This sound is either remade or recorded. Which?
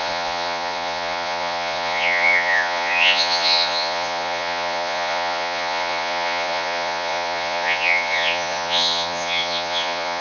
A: remade